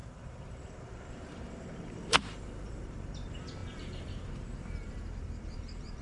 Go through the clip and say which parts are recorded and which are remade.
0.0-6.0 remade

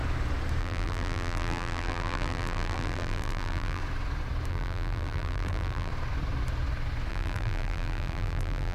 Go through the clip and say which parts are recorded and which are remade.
0.0-0.6 recorded; 0.6-3.8 remade; 3.8-4.5 recorded; 4.5-5.9 remade; 5.9-7.1 recorded; 7.1-8.7 remade

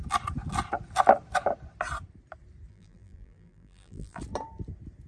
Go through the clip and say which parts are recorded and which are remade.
0.0-2.7 recorded; 2.7-4.2 remade; 4.2-5.1 recorded

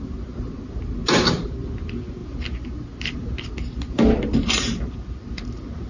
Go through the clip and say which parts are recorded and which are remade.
0.0-5.9 recorded

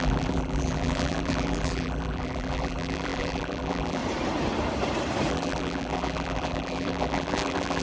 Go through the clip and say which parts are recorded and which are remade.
0.0-4.0 remade; 4.0-5.3 recorded; 5.3-7.8 remade

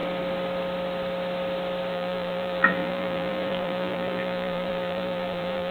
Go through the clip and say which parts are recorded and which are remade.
0.0-1.9 recorded; 1.9-5.7 remade

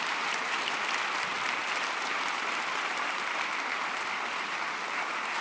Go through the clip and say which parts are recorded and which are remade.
0.0-1.6 recorded; 1.6-4.8 remade; 4.8-5.4 recorded